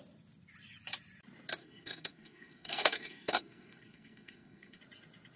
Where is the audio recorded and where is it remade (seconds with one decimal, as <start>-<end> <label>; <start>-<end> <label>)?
0.0-1.6 recorded; 1.6-4.8 remade; 4.8-5.4 recorded